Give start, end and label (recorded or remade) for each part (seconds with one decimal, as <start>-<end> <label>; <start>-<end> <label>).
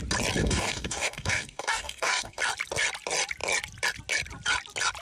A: 0.0-0.4 recorded; 0.4-2.4 remade; 2.4-5.0 recorded